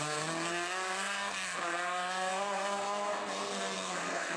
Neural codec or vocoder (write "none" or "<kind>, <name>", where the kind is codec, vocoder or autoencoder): codec, SNAC